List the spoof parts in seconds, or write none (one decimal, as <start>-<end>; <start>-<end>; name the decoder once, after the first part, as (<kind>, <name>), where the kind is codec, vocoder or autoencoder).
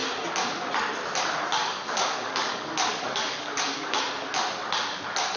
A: 1.6-4.0 (codec, DAC)